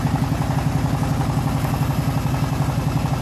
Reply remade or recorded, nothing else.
recorded